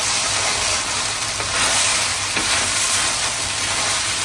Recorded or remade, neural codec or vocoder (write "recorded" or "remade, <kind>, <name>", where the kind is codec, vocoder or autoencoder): recorded